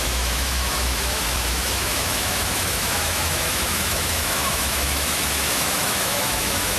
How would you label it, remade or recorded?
remade